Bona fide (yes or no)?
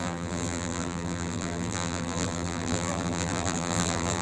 no